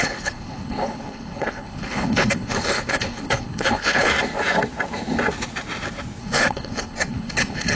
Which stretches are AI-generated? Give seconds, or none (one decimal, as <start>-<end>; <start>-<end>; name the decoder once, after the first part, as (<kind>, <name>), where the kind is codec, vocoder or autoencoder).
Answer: 0.0-4.1 (codec, HILCodec); 6.2-7.8